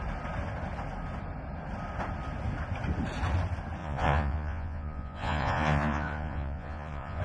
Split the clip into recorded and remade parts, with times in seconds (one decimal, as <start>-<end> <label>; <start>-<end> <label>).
0.0-3.8 recorded; 3.8-7.2 remade